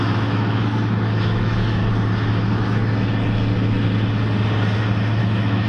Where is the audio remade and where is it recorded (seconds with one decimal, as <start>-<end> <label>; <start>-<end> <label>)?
0.0-1.8 remade; 1.8-5.2 recorded; 5.2-5.7 remade

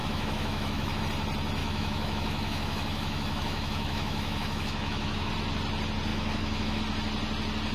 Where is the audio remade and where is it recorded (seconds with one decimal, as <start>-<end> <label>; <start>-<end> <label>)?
0.0-1.0 remade; 1.0-1.6 recorded; 1.6-5.3 remade; 5.3-6.1 recorded; 6.1-6.8 remade; 6.8-7.7 recorded

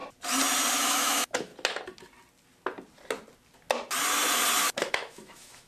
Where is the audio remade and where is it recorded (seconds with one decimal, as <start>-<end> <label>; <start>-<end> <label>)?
0.0-0.7 recorded; 0.7-1.5 remade; 1.5-4.9 recorded; 4.9-5.7 remade